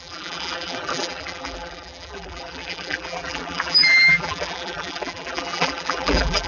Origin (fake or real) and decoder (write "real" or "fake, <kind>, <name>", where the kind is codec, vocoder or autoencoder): fake, vocoder, BigVGAN v2